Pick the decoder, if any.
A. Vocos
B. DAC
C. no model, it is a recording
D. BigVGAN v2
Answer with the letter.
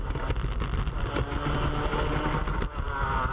C